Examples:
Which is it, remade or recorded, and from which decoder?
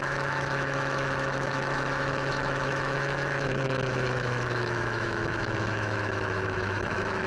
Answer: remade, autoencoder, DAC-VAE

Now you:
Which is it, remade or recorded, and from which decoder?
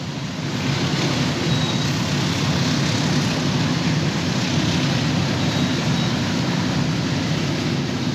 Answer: recorded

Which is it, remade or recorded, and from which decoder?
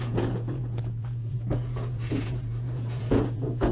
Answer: remade, vocoder, Vocos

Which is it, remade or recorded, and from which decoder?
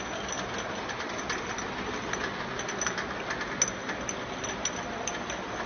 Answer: recorded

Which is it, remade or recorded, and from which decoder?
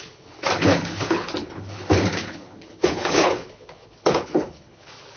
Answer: remade, codec, HILCodec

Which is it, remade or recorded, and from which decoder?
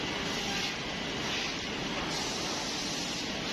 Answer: recorded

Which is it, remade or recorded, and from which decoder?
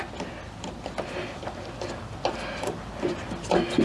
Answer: recorded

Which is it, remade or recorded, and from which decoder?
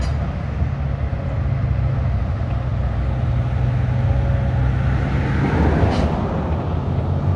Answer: recorded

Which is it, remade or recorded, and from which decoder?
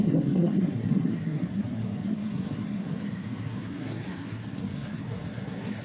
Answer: remade, codec, SNAC